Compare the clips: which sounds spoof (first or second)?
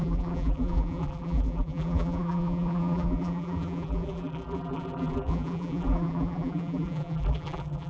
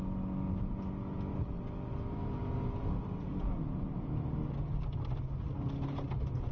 first